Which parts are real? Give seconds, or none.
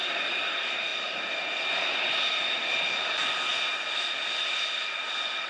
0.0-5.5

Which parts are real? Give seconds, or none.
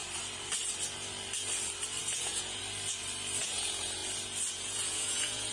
0.0-2.0; 2.6-3.4; 4.0-4.5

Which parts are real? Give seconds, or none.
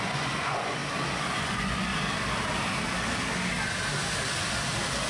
0.8-1.3; 1.9-5.1